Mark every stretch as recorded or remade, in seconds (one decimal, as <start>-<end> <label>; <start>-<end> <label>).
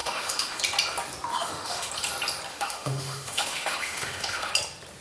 0.0-0.6 remade; 0.6-1.3 recorded; 1.3-1.9 remade; 1.9-2.5 recorded; 2.5-4.5 remade; 4.5-5.0 recorded